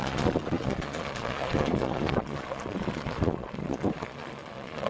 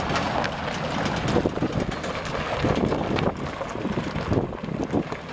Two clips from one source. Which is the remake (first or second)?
first